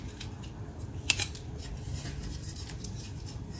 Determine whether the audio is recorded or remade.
recorded